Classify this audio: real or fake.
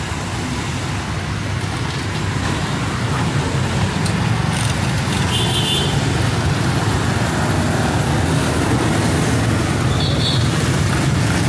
real